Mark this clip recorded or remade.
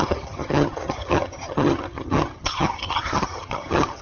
remade